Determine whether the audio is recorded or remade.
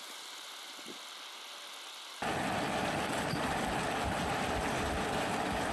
recorded